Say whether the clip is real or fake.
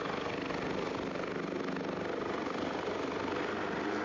real